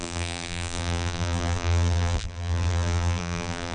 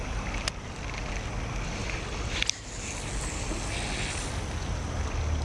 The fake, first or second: first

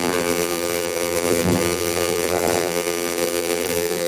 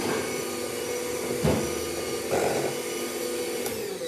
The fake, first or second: first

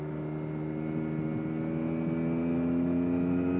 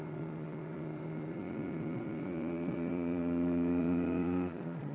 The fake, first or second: second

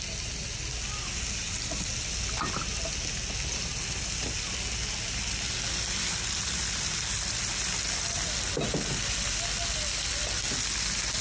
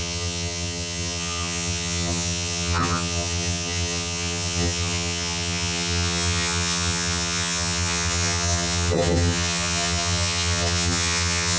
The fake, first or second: second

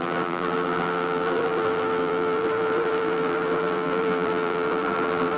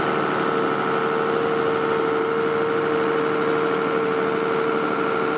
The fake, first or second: first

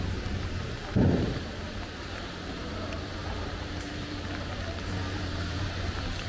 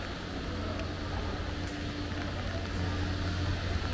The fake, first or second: first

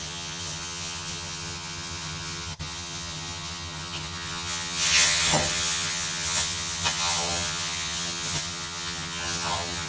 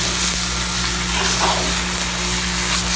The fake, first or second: first